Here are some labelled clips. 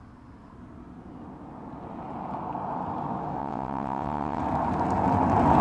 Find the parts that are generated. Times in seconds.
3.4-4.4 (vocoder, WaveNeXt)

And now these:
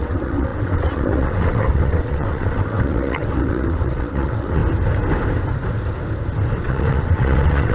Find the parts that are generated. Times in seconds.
0.0-4.6 (vocoder, WaveNeXt); 6.6-7.7

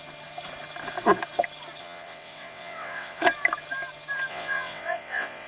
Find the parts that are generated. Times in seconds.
1.8-3.2 (vocoder, WaveNeXt); 4.3-5.5

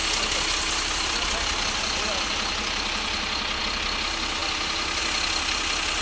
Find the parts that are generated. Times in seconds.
none

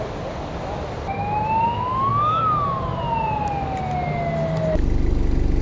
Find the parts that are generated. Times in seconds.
none